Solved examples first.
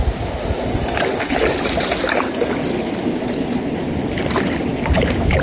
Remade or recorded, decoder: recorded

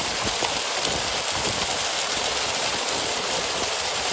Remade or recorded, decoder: recorded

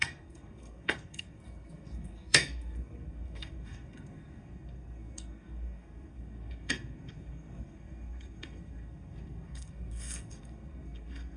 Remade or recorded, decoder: remade, codec, SNAC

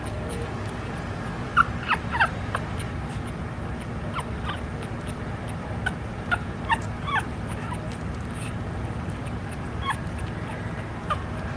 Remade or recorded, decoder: remade, vocoder, BigVGAN v2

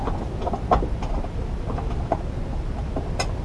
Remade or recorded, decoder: recorded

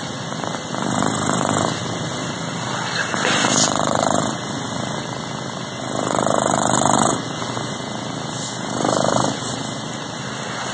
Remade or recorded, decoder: recorded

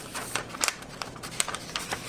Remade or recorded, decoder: remade, vocoder, BigVGAN v2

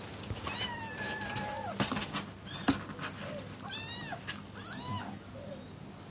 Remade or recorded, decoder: recorded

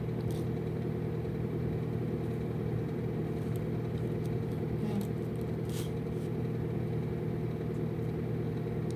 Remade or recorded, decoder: recorded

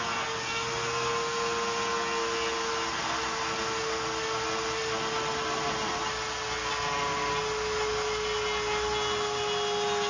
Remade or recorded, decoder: recorded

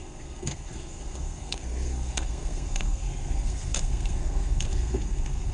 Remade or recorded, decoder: remade, codec, SNAC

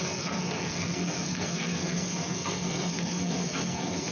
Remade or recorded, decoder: remade, codec, SNAC